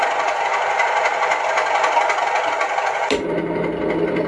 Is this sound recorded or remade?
recorded